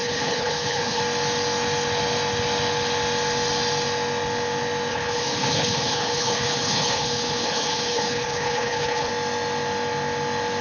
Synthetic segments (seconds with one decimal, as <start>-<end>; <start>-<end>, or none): 0.0-1.0; 4.9-9.1

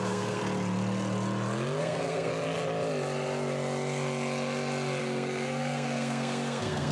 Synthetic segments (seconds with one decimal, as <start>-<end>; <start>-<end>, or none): 0.0-0.4; 1.8-2.3; 5.0-6.9

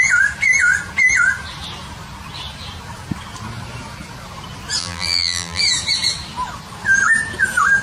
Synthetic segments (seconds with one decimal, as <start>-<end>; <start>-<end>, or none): 4.8-5.6

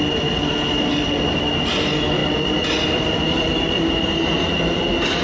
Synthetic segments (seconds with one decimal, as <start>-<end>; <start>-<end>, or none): none

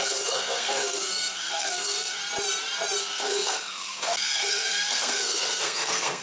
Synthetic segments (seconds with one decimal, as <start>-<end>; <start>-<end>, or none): 0.0-2.2; 3.0-6.2

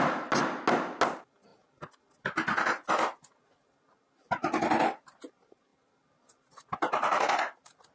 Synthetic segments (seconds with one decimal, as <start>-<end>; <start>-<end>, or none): none

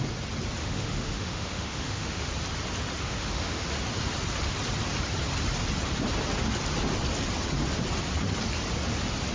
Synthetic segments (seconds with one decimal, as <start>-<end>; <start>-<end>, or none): 0.6-2.3; 3.0-3.7

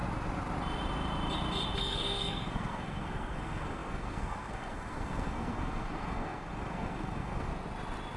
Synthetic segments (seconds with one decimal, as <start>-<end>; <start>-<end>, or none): 1.8-7.5